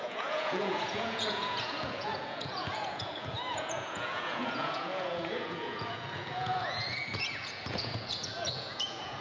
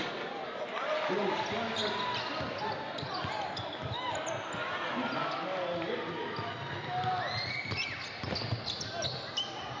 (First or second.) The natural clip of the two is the second